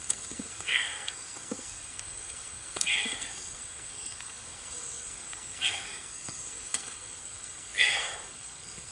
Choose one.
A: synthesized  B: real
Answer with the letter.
A